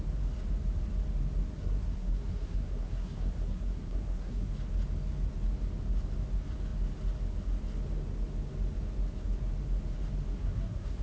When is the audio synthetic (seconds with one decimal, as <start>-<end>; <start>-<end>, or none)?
1.6-4.5; 10.3-11.0